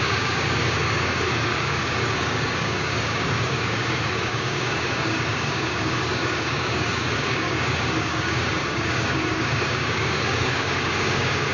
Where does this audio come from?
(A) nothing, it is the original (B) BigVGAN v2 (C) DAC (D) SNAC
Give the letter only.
C